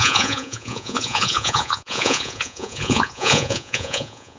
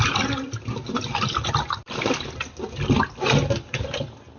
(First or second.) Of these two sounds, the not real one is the first